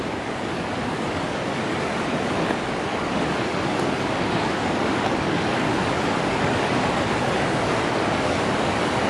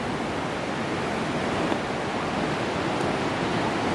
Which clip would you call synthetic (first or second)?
first